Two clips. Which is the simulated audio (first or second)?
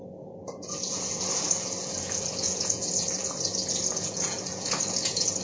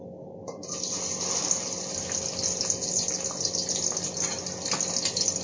first